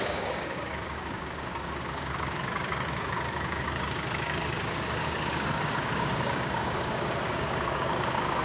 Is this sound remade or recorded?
remade